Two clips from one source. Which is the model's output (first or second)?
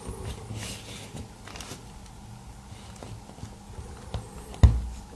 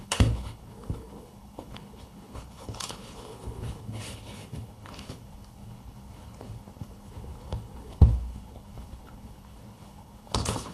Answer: second